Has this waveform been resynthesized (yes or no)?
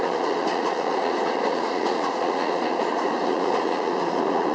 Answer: yes